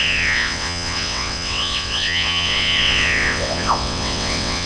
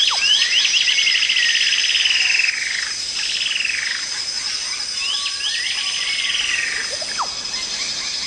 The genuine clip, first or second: second